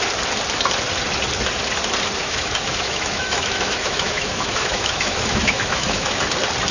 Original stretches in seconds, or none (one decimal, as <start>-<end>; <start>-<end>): 0.0-2.2; 6.2-6.7